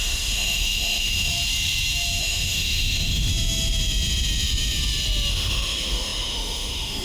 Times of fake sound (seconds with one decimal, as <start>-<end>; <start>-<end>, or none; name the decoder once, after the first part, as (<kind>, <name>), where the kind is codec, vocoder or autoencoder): 0.0-1.3 (autoencoder, DAC-VAE); 2.2-3.3; 5.3-7.0